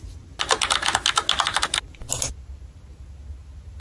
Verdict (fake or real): real